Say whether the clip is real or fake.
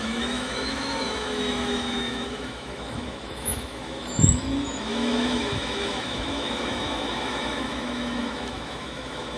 fake